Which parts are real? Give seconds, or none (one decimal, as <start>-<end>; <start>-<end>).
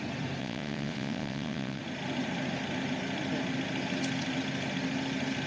0.0-0.4; 1.8-5.5